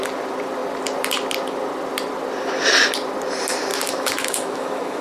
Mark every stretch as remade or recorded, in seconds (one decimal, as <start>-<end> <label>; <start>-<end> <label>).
0.0-3.7 recorded; 3.7-5.0 remade